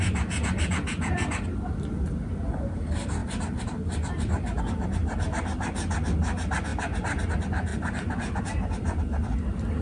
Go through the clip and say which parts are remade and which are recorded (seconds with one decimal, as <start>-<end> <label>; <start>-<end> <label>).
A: 0.0-3.2 recorded; 3.2-4.6 remade; 4.6-7.7 recorded; 7.7-9.0 remade; 9.0-9.8 recorded